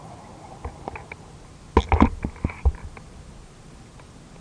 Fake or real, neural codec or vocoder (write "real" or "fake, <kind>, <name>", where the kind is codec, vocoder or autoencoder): real